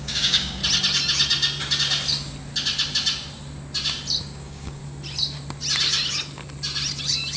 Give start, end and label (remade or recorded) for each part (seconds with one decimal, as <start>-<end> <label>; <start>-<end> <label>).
0.0-0.6 remade; 0.6-4.2 recorded; 4.2-4.8 remade; 4.8-7.4 recorded